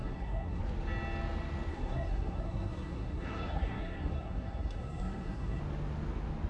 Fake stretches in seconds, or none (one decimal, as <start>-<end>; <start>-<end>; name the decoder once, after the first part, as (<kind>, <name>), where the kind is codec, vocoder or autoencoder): 0.0-0.6 (codec, SNAC); 1.7-5.6